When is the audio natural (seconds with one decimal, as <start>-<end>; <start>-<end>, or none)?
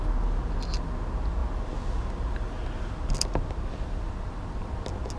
0.0-5.2